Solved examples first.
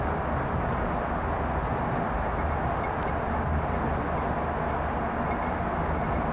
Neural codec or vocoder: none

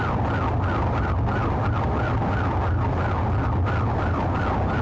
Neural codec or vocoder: none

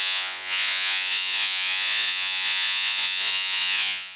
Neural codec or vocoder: vocoder, Vocos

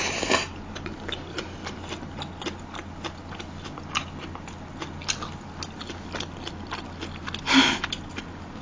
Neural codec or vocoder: none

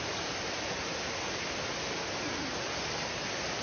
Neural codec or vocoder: none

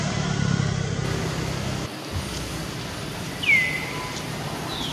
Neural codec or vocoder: none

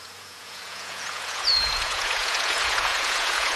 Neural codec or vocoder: vocoder, Vocos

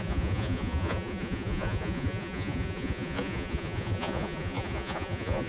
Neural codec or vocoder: vocoder, Vocos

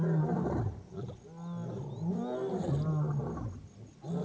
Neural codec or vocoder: none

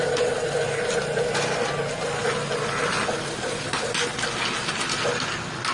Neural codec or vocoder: none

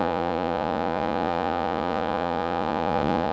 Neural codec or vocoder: vocoder, Vocos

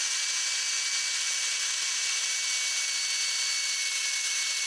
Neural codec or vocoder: none